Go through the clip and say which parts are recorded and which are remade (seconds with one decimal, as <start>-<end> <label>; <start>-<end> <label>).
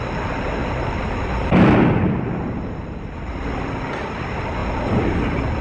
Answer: 0.0-0.6 recorded; 0.6-4.0 remade; 4.0-4.6 recorded; 4.6-5.6 remade